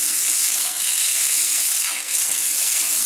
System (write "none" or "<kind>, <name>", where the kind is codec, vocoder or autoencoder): codec, SNAC